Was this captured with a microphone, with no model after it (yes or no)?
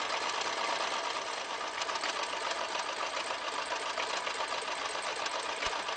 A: yes